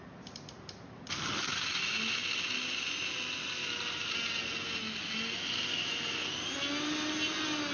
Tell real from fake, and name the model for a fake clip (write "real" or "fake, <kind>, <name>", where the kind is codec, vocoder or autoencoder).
real